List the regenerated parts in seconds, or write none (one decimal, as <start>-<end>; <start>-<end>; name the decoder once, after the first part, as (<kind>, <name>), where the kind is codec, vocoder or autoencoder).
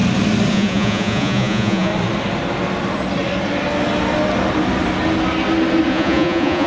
0.5-1.9 (vocoder, Vocos); 5.9-6.7